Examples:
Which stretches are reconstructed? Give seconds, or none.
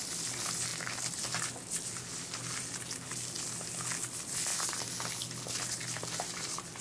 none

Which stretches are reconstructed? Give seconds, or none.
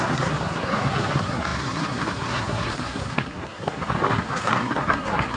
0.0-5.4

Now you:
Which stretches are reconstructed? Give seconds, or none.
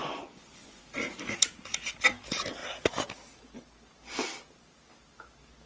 0.0-0.8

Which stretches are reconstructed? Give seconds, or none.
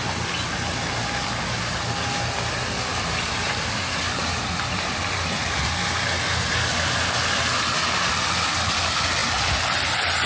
2.9-5.7